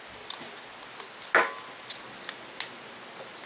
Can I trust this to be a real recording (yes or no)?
yes